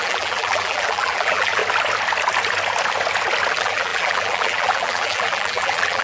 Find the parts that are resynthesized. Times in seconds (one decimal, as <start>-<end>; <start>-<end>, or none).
0.0-1.6; 3.5-6.0